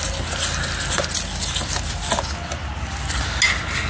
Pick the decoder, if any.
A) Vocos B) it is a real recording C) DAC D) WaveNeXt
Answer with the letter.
B